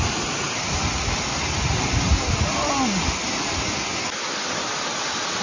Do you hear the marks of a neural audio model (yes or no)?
no